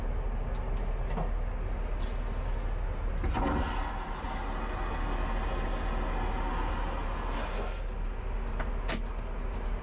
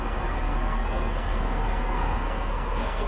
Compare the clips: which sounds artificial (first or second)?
second